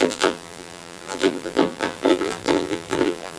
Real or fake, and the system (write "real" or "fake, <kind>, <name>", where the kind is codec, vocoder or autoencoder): fake, vocoder, BigVGAN v2